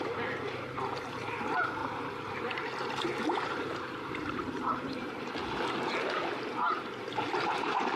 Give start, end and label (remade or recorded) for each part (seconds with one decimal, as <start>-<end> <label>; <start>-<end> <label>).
0.0-5.4 remade; 5.4-7.0 recorded; 7.0-8.0 remade